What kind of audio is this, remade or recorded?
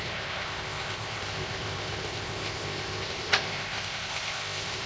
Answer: remade